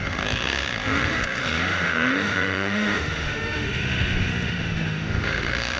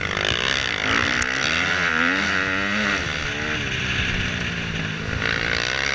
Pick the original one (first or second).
second